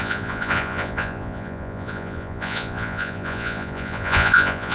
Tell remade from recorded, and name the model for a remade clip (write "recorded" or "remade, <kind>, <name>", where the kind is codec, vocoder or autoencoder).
remade, vocoder, Vocos